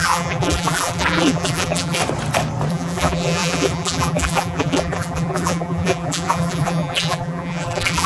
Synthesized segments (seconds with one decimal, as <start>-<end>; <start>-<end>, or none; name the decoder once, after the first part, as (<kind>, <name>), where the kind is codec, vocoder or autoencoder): 0.0-2.0 (vocoder, BigVGAN v2); 2.7-8.1